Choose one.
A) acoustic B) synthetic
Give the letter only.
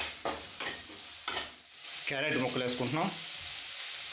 A